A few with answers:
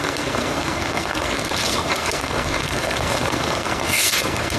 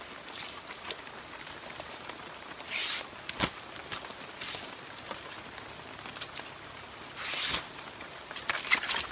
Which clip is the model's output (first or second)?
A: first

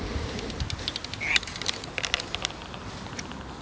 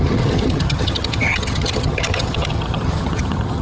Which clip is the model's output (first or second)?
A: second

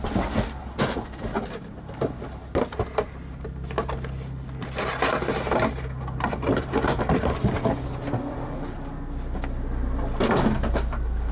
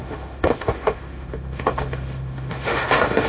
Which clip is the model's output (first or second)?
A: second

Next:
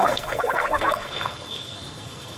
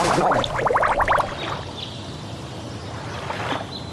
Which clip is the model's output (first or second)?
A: first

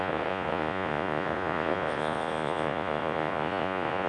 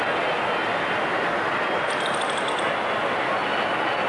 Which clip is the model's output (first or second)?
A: first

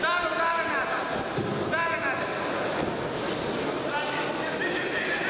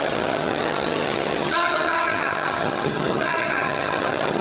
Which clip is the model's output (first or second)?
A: second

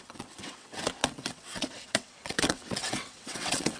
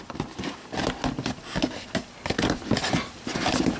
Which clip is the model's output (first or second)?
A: first